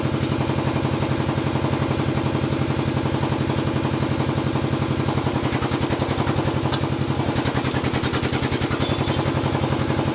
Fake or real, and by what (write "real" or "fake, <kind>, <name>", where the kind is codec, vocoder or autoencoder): real